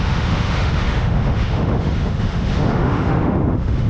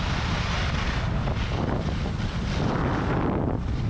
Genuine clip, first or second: second